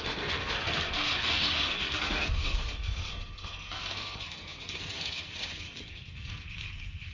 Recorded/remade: remade